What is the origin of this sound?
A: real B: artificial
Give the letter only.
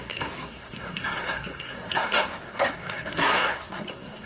B